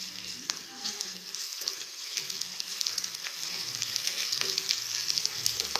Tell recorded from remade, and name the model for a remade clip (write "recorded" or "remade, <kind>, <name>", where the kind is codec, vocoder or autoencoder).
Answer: remade, codec, SNAC